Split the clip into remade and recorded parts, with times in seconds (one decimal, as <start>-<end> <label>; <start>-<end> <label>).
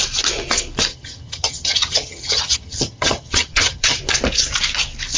0.0-0.9 recorded; 0.9-4.0 remade; 4.0-5.2 recorded